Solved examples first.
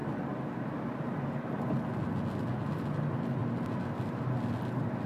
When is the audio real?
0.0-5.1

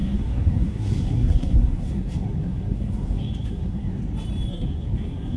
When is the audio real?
4.0-4.5

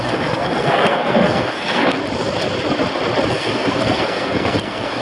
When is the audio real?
2.0-3.3

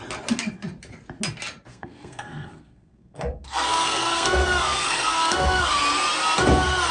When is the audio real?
0.0-1.7; 5.8-6.9